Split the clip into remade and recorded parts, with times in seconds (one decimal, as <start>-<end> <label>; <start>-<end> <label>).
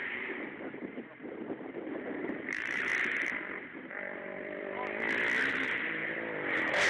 0.0-2.9 remade; 2.9-3.9 recorded; 3.9-4.3 remade; 4.3-5.5 recorded; 5.5-6.0 remade; 6.0-6.9 recorded